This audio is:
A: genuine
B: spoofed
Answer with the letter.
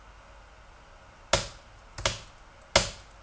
A